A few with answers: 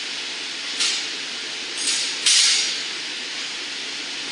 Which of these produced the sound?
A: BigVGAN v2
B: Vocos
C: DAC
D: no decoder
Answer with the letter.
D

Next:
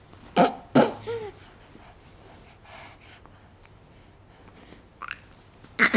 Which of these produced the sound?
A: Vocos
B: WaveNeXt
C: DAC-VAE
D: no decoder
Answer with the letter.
D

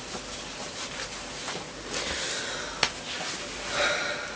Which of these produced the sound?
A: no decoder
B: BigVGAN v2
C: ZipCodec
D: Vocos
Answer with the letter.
A